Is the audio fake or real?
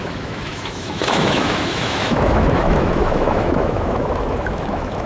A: fake